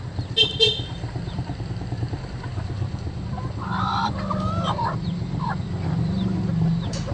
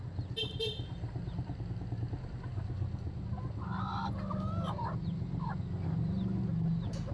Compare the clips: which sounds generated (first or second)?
first